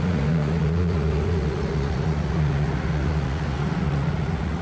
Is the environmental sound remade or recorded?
remade